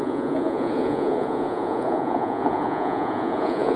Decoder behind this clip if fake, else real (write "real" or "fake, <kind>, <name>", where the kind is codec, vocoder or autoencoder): fake, vocoder, Vocos